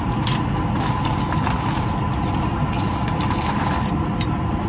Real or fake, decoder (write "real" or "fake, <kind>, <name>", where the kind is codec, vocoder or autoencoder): real